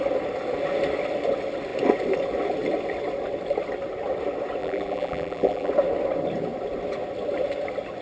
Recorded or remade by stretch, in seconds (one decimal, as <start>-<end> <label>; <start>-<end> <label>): 0.0-4.6 recorded; 4.6-5.7 remade; 5.7-8.0 recorded